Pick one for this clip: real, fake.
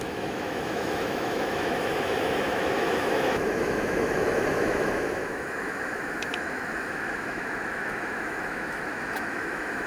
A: fake